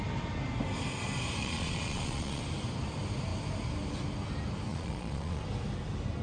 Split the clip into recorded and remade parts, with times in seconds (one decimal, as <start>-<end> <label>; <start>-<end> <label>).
0.0-1.4 recorded; 1.4-2.4 remade; 2.4-4.7 recorded; 4.7-5.4 remade; 5.4-6.2 recorded